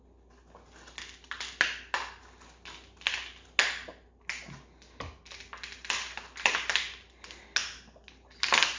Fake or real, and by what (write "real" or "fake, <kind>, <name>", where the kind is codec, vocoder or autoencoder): real